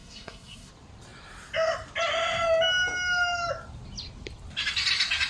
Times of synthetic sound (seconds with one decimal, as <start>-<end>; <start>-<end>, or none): 0.0-0.7